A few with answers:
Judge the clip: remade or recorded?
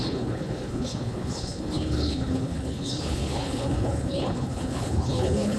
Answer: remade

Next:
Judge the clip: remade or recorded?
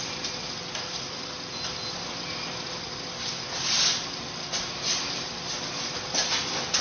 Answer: recorded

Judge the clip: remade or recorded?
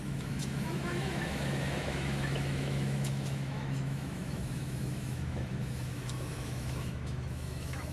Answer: remade